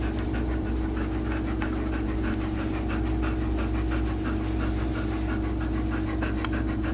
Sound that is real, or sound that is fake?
real